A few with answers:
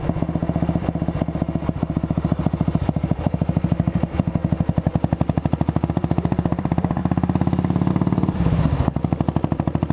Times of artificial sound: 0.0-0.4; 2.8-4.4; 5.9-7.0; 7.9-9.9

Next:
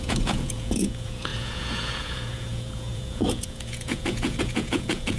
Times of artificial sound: 0.0-5.2

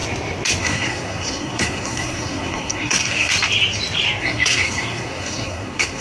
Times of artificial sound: 0.6-3.3; 4.2-6.0

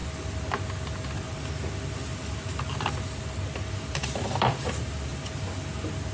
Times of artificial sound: 3.7-5.1